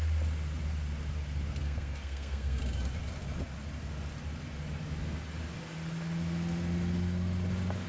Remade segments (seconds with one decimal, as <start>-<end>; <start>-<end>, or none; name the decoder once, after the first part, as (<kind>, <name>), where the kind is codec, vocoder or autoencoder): 1.6-2.6 (codec, SNAC)